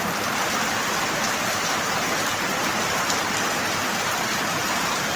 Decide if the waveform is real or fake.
real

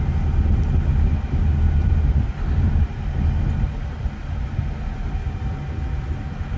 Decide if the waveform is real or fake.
real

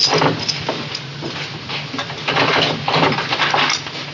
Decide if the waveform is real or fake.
real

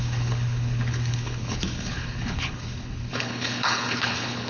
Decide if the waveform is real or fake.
fake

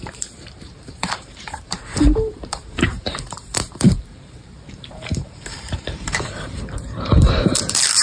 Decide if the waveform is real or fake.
fake